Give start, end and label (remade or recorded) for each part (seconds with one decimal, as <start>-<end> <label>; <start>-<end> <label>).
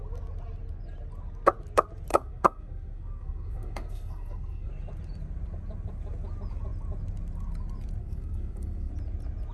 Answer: 0.0-2.1 recorded; 2.1-4.7 remade; 4.7-8.0 recorded; 8.0-8.9 remade; 8.9-9.5 recorded